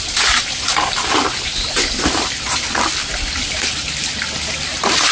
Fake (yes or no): no